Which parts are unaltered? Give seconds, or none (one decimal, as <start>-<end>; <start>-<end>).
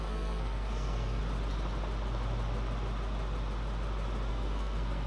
1.2-4.3